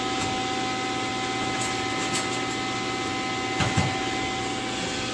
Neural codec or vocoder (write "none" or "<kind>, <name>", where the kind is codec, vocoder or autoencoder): none